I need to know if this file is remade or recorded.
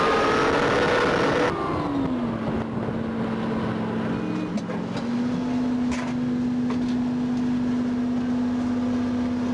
recorded